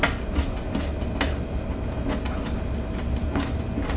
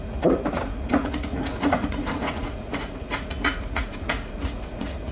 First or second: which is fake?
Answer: second